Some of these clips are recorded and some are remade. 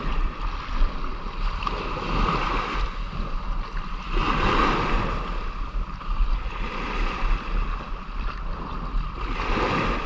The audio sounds recorded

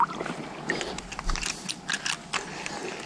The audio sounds recorded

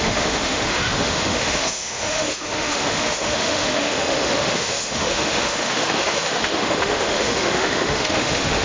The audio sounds remade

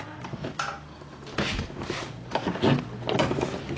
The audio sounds recorded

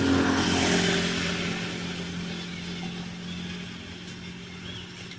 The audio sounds recorded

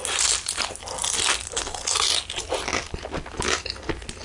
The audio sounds recorded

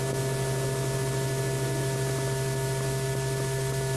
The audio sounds recorded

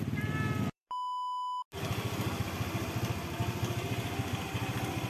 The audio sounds recorded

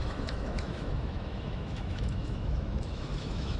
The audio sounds remade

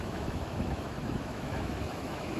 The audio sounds remade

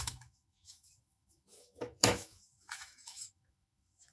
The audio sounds remade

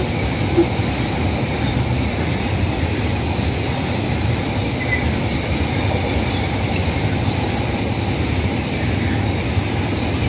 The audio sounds recorded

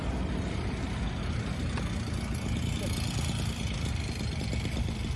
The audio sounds recorded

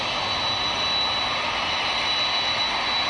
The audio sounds recorded